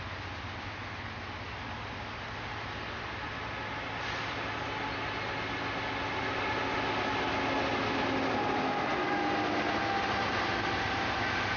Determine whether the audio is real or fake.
real